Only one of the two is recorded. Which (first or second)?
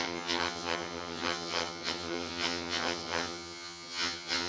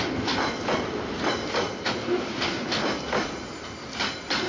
second